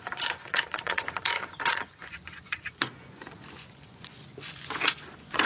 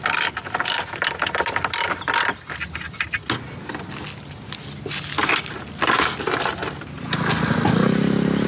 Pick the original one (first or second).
second